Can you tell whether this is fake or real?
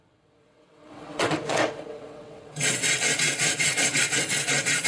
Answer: fake